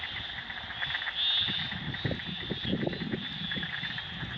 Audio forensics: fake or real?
real